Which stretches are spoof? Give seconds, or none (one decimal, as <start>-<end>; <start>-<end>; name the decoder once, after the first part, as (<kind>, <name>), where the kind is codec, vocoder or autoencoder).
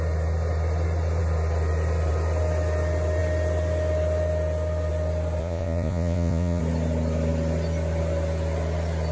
5.4-6.6 (vocoder, Vocos)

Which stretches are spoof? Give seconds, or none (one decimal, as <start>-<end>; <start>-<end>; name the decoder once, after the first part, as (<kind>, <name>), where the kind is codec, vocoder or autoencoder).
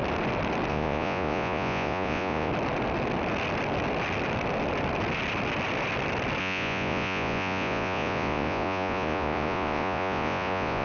0.7-2.5 (vocoder, Vocos); 6.4-10.8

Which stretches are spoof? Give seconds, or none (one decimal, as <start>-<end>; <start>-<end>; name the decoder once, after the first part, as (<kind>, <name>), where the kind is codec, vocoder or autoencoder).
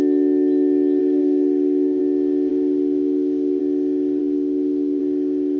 1.0-2.0 (codec, SNAC); 2.5-3.6; 4.2-5.0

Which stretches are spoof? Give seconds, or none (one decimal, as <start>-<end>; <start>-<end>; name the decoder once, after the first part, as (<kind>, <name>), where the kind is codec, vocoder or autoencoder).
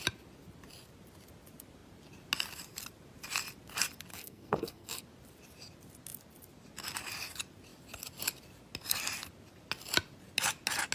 4.1-5.0 (codec, SNAC)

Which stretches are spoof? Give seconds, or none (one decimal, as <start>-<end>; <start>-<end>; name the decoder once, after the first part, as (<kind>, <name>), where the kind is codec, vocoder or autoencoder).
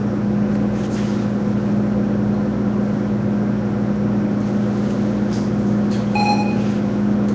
none